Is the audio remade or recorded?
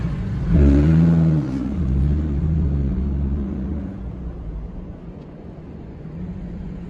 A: remade